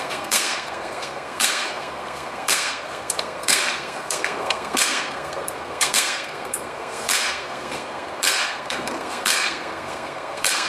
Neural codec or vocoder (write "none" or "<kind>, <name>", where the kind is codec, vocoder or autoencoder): codec, SNAC